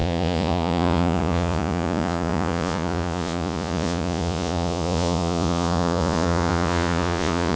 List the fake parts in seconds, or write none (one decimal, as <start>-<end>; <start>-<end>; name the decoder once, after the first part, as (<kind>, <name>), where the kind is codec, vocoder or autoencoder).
0.0-7.6 (vocoder, Vocos)